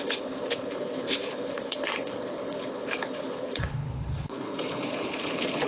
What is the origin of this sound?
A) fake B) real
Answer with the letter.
A